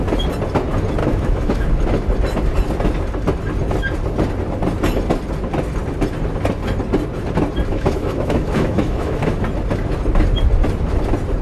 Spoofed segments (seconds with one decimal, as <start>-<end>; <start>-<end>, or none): 1.0-1.7; 7.7-9.4